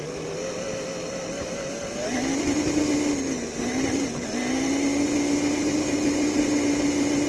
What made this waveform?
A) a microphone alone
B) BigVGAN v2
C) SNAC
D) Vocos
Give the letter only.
A